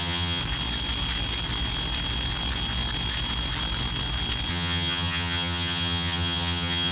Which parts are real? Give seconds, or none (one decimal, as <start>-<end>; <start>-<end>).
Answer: 0.4-4.5